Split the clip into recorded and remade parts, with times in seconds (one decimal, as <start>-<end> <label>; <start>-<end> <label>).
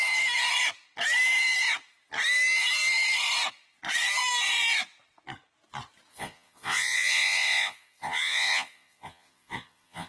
0.0-6.1 recorded; 6.1-10.1 remade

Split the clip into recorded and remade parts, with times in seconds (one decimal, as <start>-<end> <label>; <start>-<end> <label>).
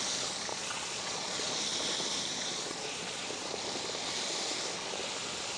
0.0-0.5 recorded; 0.5-1.6 remade; 1.6-2.3 recorded; 2.3-3.2 remade; 3.2-5.6 recorded